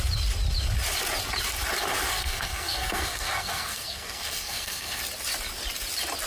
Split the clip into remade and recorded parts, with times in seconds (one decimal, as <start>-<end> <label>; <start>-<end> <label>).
0.0-2.1 recorded; 2.1-5.0 remade; 5.0-6.3 recorded